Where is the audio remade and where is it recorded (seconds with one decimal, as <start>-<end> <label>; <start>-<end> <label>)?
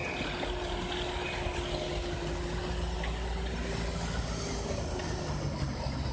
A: 0.0-6.1 recorded